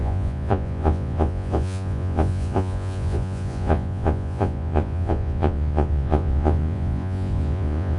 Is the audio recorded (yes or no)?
no